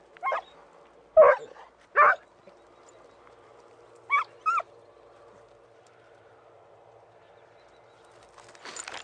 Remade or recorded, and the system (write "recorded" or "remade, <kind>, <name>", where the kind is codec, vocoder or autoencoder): recorded